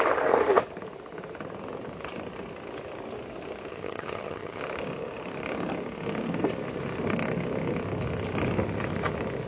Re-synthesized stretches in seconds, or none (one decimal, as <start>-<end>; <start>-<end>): 3.7-4.6